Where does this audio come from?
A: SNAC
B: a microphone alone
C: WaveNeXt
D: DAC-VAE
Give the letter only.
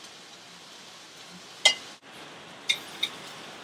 B